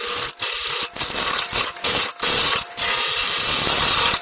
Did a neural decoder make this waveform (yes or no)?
no